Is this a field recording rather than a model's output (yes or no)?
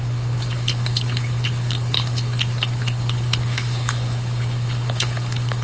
no